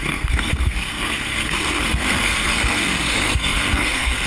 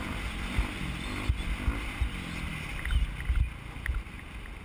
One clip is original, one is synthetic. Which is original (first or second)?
second